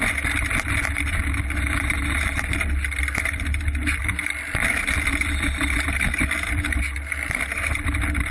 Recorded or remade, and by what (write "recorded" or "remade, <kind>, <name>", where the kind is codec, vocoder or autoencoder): recorded